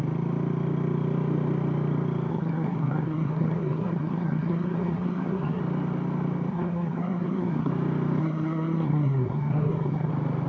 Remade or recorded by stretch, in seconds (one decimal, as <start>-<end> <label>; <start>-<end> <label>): 0.0-2.3 recorded; 2.3-5.6 remade; 5.6-6.5 recorded; 6.5-7.7 remade; 7.7-8.2 recorded; 8.2-10.1 remade; 10.1-10.5 recorded

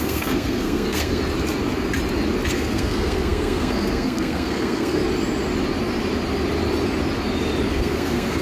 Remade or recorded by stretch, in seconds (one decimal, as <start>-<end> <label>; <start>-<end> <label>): 0.0-1.2 remade; 1.2-2.5 recorded; 2.5-5.0 remade; 5.0-7.7 recorded; 7.7-8.4 remade

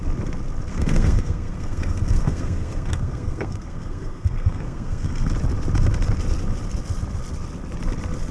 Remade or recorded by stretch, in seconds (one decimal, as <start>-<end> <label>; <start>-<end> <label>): 0.0-0.7 recorded; 0.7-5.3 remade; 5.3-8.3 recorded

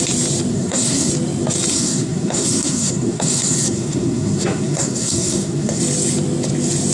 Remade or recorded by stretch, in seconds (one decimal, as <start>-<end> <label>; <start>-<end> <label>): 0.0-0.5 recorded; 0.5-1.1 remade; 1.1-1.7 recorded; 1.7-5.8 remade; 5.8-6.9 recorded

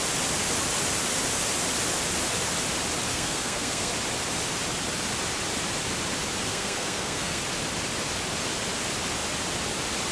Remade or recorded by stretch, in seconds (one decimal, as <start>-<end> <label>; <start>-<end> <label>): 0.0-3.1 recorded; 3.1-3.9 remade; 3.9-6.5 recorded; 6.5-7.4 remade; 7.4-10.1 recorded

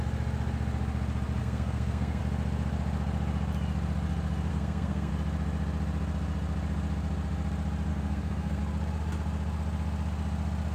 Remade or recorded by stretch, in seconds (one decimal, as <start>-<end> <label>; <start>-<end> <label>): 0.0-1.4 recorded; 1.4-2.2 remade; 2.2-4.5 recorded; 4.5-5.1 remade; 5.1-7.9 recorded; 7.9-8.6 remade; 8.6-10.7 recorded